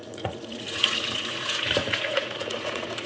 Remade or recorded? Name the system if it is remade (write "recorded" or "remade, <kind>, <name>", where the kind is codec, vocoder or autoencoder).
remade, vocoder, Vocos